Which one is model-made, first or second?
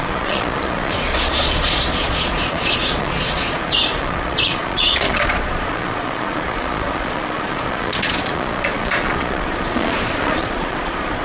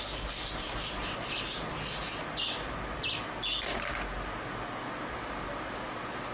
first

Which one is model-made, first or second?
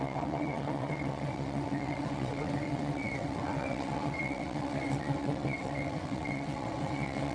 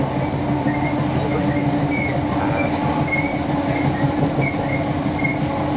first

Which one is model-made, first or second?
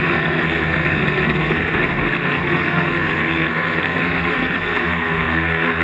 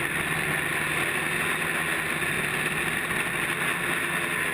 first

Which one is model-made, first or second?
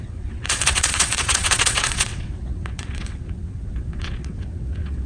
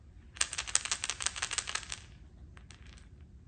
first